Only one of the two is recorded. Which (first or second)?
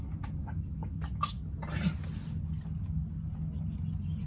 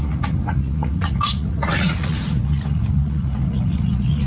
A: first